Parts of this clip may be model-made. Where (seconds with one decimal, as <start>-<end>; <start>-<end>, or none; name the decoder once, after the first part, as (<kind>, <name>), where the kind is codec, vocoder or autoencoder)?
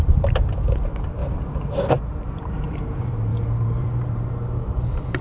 0.0-1.2 (vocoder, BigVGAN v2); 1.9-3.3; 3.8-5.2